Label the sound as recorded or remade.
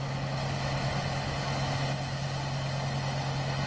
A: recorded